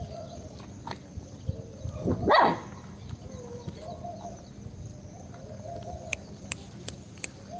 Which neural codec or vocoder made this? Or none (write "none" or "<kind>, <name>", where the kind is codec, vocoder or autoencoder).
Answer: none